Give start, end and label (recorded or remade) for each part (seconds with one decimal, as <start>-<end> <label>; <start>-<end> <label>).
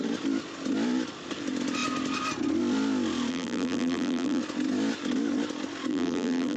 0.0-3.3 recorded; 3.3-4.4 remade; 4.4-5.9 recorded; 5.9-6.6 remade